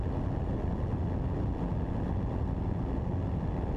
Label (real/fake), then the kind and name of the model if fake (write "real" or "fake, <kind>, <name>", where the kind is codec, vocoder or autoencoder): real